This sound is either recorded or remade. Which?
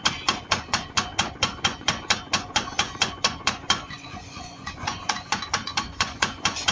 remade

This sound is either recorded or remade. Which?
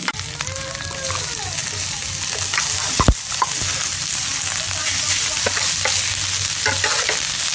recorded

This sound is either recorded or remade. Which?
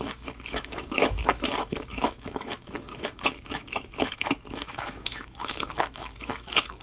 remade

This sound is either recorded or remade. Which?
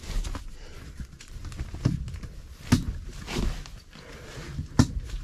recorded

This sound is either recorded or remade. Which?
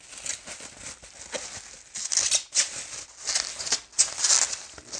recorded